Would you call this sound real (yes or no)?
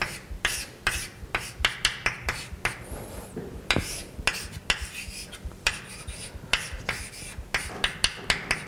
yes